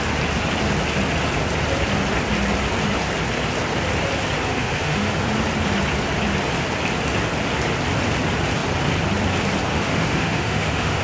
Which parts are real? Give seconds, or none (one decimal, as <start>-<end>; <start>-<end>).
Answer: 0.0-4.5; 5.1-9.7